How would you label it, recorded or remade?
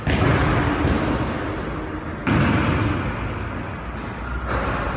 recorded